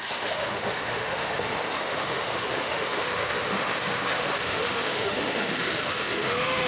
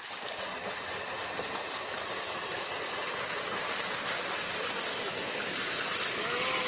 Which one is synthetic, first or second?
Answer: first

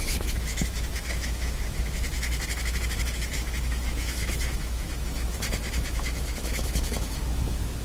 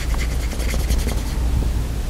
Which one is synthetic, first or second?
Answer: first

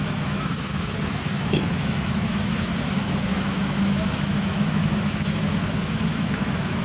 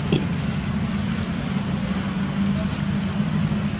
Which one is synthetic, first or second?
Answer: first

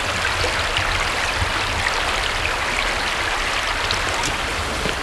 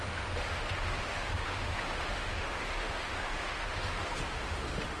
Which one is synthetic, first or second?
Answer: second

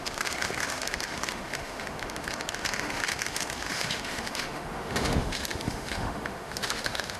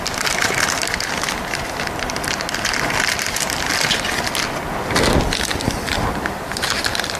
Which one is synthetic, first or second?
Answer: first